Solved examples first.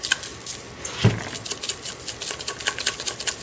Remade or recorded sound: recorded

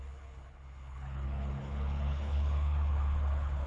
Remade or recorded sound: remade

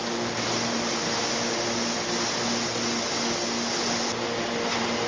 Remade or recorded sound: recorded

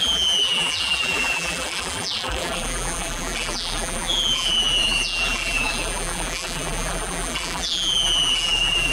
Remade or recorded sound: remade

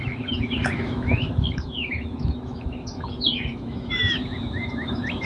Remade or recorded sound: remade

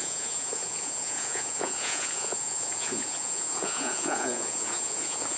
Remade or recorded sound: remade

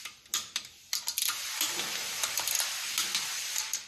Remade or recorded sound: recorded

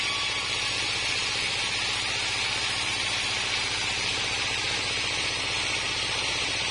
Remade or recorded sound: recorded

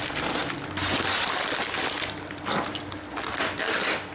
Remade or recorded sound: recorded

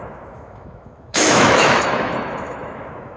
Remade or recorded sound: remade